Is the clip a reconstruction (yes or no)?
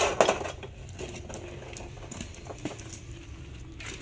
no